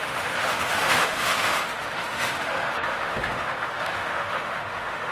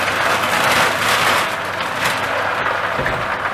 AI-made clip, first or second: first